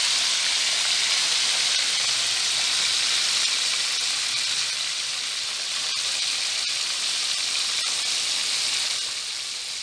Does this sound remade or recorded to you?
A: recorded